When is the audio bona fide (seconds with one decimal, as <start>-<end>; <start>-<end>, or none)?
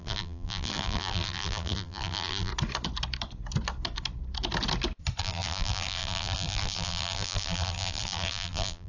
2.5-5.2